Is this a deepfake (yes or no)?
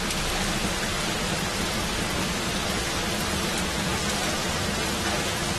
no